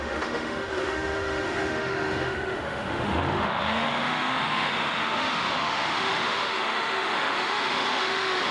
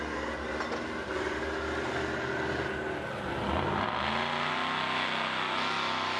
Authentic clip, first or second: second